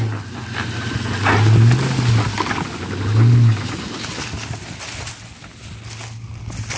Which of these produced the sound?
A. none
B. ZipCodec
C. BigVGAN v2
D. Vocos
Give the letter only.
A